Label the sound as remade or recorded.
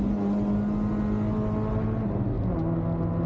recorded